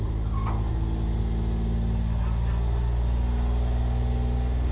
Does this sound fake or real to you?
real